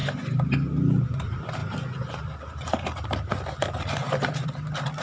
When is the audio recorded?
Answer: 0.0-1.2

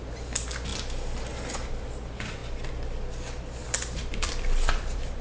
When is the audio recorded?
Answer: 0.0-3.6